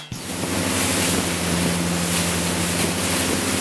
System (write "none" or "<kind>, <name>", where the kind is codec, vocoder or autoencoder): none